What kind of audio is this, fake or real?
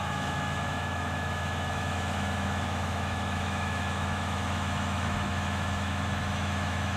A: fake